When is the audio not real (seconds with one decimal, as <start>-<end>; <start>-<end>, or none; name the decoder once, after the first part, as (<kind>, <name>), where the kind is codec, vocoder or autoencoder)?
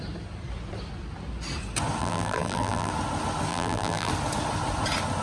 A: 2.0-2.9 (vocoder, BigVGAN v2); 3.5-4.1